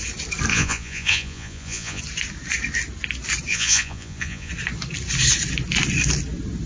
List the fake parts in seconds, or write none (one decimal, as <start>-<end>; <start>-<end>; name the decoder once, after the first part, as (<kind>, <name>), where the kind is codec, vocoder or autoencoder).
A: 0.5-2.0 (vocoder, Vocos); 3.5-4.5